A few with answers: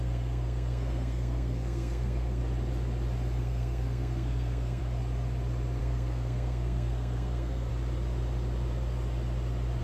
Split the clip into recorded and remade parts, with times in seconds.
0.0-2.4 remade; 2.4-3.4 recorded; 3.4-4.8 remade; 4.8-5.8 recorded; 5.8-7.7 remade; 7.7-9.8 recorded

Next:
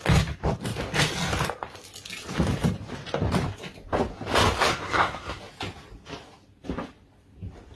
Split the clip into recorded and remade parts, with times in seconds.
0.0-4.7 recorded; 4.7-5.4 remade; 5.4-7.8 recorded

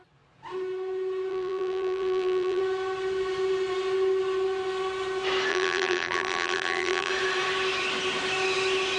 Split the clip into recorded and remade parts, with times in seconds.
0.0-1.3 recorded; 1.3-2.6 remade; 2.6-5.5 recorded; 5.5-7.1 remade; 7.1-9.0 recorded

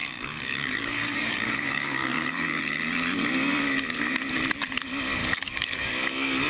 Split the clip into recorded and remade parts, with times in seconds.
0.0-2.6 remade; 2.6-5.2 recorded; 5.2-5.8 remade; 5.8-6.5 recorded

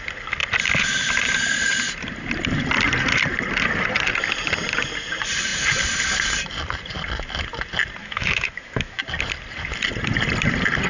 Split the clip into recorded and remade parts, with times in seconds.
0.0-8.0 recorded; 8.0-9.0 remade; 9.0-10.9 recorded

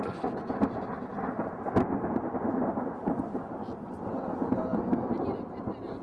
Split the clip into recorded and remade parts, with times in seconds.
0.0-6.0 recorded

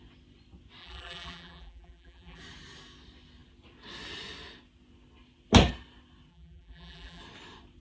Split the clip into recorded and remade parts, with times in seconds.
0.0-0.8 recorded; 0.8-2.4 remade; 2.4-6.3 recorded; 6.3-7.2 remade; 7.2-7.8 recorded

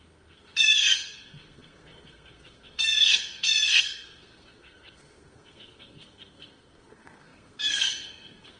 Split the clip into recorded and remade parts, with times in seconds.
0.0-8.6 remade